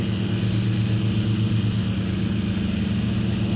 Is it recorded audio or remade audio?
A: recorded